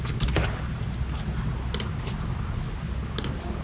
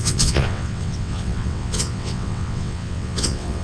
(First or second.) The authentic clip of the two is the first